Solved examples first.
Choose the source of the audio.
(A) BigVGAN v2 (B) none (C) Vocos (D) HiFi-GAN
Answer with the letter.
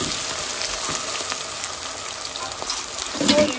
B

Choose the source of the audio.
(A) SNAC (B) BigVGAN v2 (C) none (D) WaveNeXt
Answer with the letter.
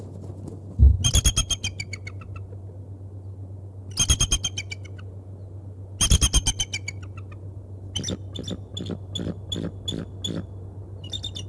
C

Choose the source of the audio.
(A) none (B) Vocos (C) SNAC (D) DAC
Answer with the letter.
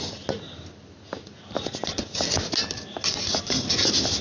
A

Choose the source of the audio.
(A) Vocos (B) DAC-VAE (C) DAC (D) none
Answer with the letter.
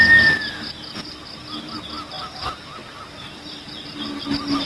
D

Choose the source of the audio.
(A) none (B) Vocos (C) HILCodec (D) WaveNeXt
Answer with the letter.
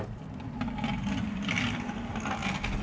A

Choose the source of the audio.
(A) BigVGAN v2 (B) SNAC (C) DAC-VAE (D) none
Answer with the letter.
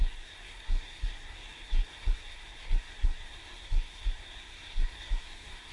B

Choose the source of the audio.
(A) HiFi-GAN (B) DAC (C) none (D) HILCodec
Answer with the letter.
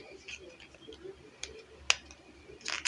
C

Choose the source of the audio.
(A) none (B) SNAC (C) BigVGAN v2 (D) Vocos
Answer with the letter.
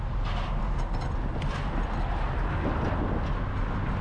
A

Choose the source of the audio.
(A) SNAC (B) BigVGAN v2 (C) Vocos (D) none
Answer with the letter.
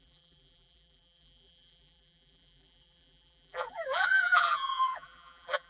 B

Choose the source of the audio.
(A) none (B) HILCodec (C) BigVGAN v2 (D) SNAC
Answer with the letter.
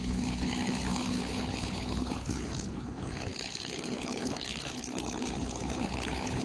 B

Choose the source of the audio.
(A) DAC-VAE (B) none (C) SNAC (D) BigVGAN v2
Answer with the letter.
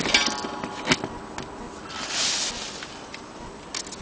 B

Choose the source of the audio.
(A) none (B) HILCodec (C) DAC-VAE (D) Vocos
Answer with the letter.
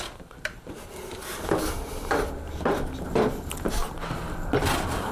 A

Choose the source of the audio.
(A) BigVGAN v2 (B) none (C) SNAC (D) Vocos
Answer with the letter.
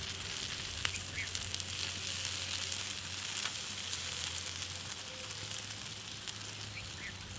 B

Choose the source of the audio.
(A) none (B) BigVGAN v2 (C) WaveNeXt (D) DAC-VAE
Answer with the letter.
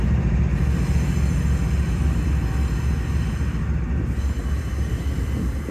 A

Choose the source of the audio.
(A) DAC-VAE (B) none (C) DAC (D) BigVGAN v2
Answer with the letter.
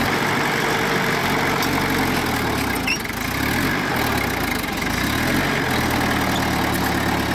B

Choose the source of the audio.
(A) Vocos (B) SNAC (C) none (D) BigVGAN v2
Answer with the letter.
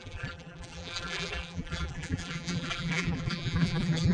D